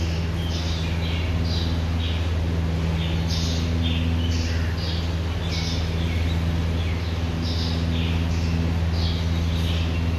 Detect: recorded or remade recorded